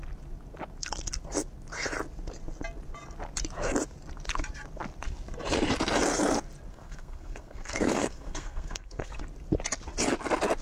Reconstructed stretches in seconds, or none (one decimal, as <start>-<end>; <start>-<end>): 6.7-9.2